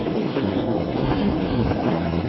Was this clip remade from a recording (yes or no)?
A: yes